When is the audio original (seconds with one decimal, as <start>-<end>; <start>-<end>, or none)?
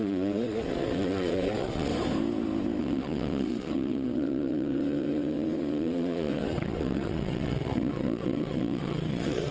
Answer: 1.9-2.8